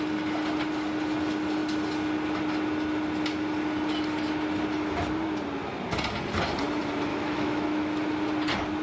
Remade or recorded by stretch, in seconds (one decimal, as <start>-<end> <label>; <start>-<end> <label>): 0.0-7.1 recorded; 7.1-8.1 remade; 8.1-8.8 recorded